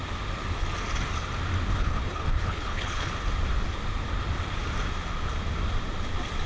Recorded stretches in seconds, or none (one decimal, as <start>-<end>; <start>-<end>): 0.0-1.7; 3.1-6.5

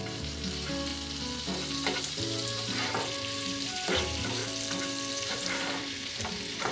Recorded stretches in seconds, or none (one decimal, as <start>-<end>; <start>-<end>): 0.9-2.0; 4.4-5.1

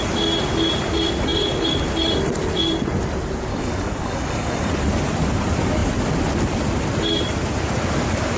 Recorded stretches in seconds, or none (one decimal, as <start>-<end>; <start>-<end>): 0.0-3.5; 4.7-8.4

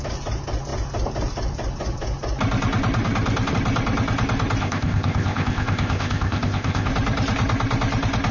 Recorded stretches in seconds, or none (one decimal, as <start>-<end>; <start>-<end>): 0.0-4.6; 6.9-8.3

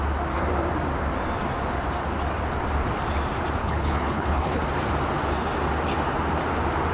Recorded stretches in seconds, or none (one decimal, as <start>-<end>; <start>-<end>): 0.0-3.6; 4.6-6.9